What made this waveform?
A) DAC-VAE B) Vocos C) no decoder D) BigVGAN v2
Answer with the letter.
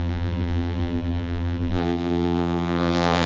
D